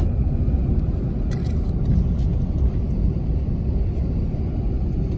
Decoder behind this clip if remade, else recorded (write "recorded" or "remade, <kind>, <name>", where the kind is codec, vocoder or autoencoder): recorded